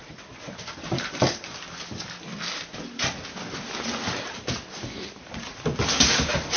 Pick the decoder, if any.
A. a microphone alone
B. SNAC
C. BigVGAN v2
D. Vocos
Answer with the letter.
A